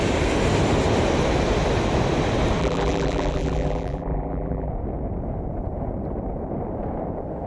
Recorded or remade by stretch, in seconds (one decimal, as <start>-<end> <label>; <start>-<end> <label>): 0.0-2.6 recorded; 2.6-4.7 remade; 4.7-7.5 recorded